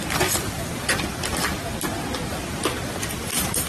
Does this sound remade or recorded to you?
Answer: recorded